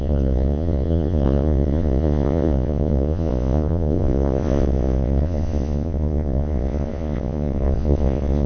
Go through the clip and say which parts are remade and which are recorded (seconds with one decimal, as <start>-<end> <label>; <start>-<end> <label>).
0.0-8.5 remade